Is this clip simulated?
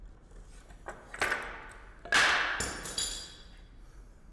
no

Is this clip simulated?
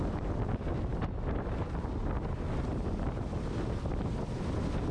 no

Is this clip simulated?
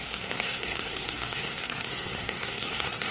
yes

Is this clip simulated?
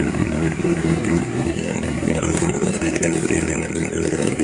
yes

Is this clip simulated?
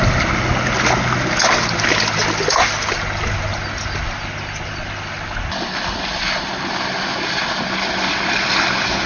no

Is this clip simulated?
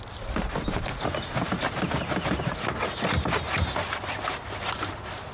no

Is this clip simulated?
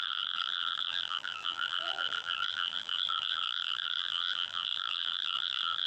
yes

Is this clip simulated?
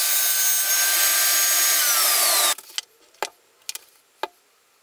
no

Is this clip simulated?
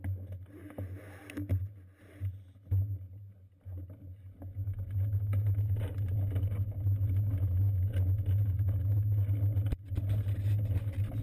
no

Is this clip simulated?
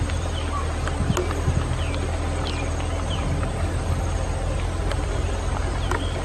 no